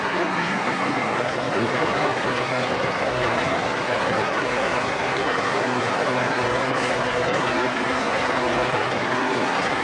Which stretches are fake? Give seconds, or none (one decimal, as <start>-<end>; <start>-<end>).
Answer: 0.0-9.8